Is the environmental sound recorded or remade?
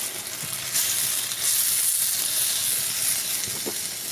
recorded